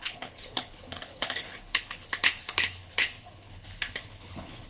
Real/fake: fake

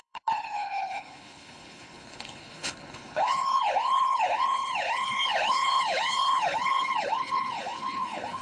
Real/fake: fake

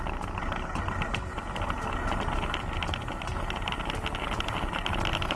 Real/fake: real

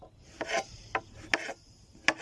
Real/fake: real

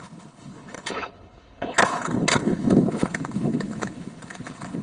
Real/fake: fake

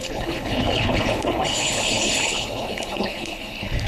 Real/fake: fake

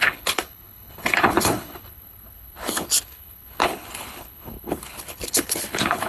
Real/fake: fake